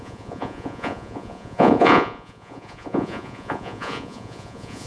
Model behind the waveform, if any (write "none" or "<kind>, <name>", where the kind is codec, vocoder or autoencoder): vocoder, Vocos